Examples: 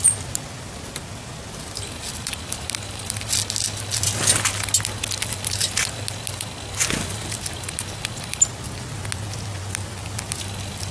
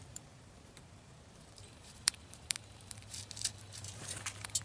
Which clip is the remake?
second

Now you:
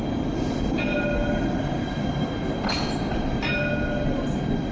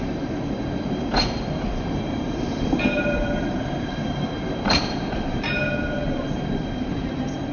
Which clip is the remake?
second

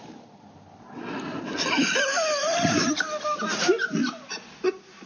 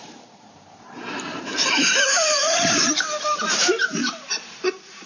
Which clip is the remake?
second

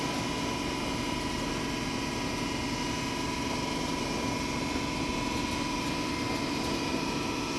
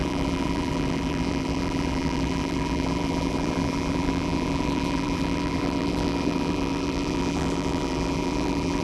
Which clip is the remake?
second